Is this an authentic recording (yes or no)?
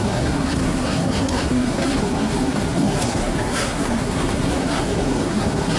no